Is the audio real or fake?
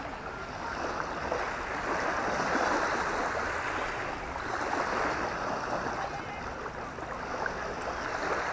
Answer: real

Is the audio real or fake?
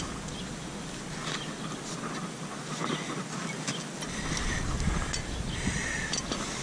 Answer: real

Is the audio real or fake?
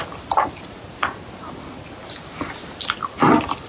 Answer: real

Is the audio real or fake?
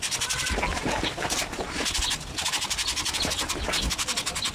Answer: real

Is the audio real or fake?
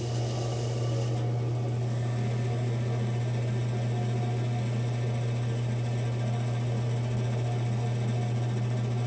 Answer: real